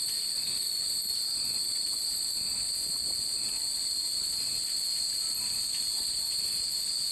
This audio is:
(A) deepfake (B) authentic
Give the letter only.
A